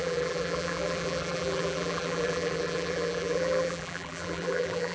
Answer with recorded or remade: remade